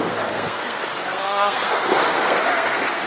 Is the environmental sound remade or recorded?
remade